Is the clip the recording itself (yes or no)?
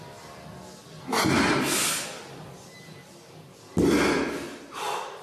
yes